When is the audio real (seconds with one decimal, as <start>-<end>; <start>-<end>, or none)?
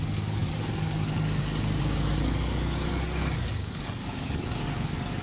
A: none